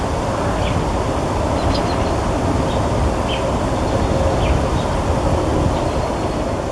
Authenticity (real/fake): real